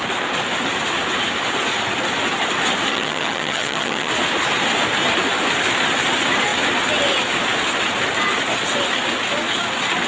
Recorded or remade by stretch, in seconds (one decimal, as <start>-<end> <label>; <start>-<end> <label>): 0.0-2.9 recorded; 2.9-4.1 remade; 4.1-10.1 recorded